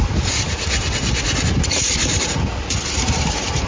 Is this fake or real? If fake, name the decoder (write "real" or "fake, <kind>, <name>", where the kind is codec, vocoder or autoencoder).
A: real